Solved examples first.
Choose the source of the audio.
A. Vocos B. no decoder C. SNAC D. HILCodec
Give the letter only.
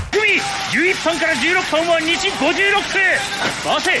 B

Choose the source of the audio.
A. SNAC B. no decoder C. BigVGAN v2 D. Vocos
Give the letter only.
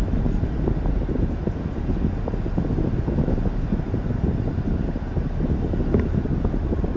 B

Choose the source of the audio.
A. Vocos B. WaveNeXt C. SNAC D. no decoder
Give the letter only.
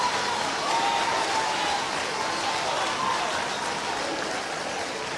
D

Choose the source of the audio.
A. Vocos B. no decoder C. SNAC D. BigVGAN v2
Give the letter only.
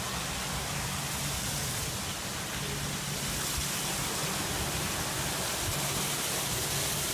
B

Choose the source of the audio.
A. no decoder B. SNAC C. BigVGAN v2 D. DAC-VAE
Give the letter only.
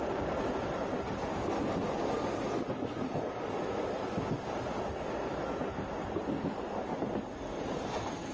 A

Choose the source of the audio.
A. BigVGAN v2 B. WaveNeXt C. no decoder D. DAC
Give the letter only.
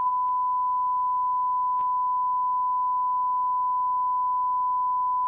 C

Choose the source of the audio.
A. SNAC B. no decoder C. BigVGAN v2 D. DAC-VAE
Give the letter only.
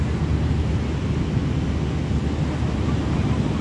B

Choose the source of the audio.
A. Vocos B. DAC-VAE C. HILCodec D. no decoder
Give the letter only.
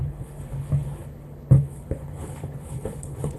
C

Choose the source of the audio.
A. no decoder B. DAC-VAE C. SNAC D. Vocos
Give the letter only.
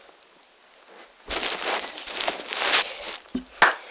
A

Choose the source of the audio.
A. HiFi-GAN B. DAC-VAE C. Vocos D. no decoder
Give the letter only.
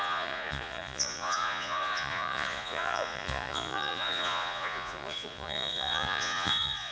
C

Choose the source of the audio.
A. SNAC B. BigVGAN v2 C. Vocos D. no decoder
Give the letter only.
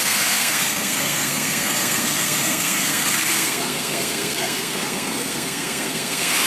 A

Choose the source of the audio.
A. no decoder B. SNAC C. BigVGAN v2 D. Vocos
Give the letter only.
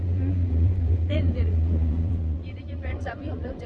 D